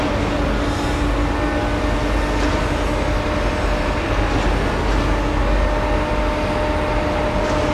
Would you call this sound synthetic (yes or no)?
no